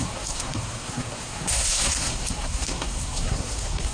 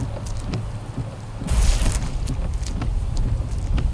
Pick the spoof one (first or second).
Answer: first